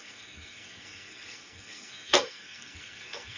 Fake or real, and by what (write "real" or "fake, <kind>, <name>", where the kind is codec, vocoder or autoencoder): fake, codec, SNAC